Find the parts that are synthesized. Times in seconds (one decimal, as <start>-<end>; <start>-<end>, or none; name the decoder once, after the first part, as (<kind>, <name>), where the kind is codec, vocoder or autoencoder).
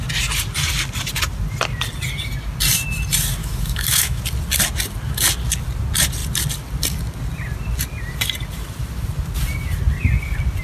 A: 3.4-4.2 (autoencoder, DAC-VAE)